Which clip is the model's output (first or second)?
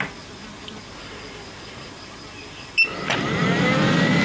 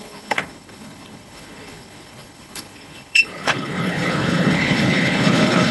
second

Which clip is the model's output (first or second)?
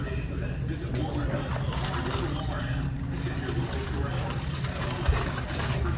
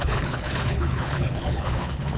second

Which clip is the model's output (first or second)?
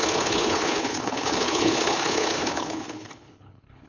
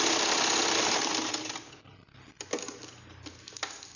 first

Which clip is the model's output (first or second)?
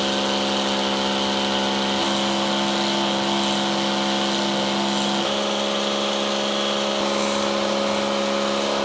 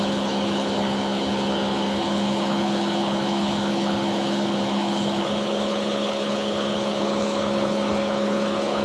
second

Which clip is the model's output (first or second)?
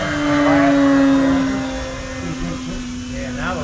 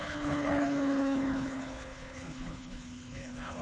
second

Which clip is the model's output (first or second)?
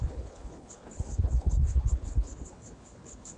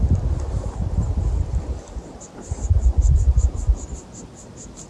first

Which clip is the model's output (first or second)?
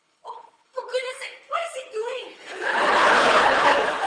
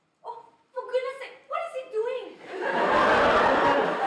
first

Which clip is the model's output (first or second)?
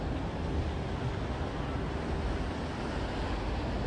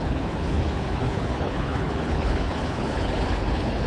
second